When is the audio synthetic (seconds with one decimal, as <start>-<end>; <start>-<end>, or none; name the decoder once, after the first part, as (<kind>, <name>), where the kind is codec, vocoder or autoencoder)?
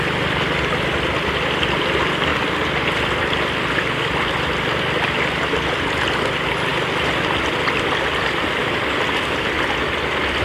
none